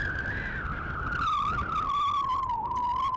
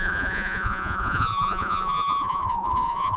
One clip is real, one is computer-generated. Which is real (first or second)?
first